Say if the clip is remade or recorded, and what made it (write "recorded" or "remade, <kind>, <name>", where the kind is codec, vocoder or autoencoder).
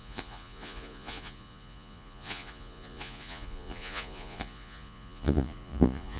remade, vocoder, Vocos